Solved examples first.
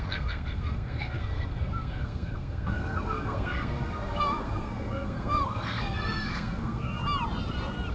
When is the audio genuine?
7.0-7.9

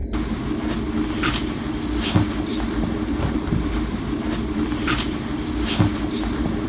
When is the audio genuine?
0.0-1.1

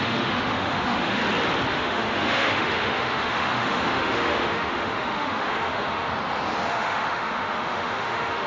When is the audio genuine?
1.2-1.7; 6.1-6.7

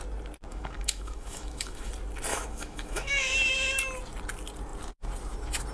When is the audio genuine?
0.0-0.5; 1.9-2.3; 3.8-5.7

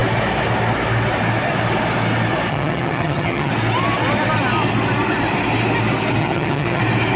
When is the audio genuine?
0.0-2.5; 3.5-6.2; 6.8-7.2

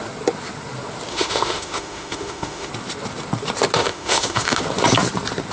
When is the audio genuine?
0.0-1.1; 2.7-3.8; 4.6-5.5

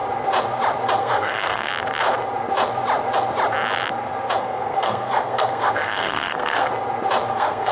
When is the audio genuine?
0.0-1.0; 1.7-4.4; 6.7-7.3